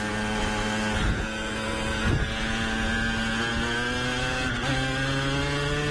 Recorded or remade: recorded